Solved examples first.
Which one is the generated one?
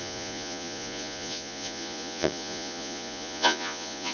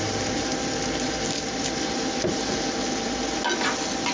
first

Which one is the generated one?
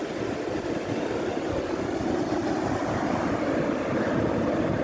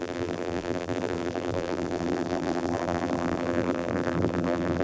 second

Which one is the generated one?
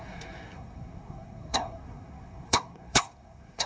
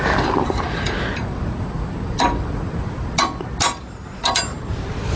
first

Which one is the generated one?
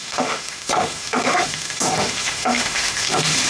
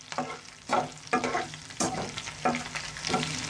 first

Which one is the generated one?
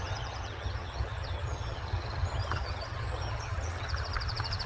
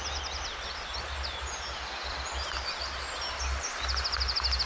first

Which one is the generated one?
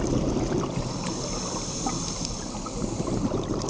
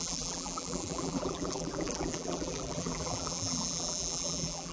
second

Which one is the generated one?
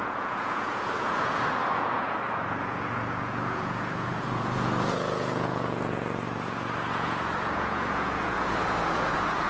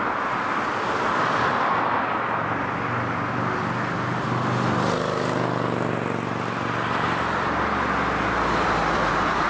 first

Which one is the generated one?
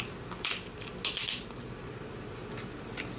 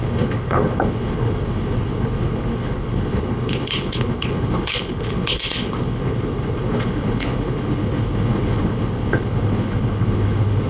second